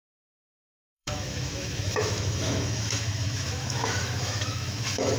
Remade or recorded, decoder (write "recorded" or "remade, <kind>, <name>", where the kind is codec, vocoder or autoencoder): remade, autoencoder, DAC-VAE